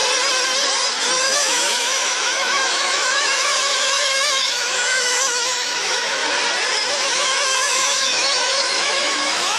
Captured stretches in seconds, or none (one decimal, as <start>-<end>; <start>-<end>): 0.0-1.2; 6.2-6.9